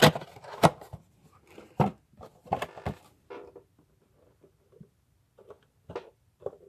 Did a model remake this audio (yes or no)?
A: no